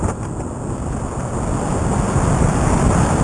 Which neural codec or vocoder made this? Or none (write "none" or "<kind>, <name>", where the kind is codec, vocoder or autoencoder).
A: none